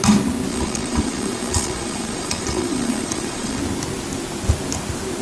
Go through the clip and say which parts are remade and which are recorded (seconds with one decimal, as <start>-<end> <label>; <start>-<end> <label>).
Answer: 0.0-0.5 recorded; 0.5-3.6 remade; 3.6-5.2 recorded